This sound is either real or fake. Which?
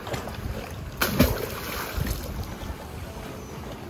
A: real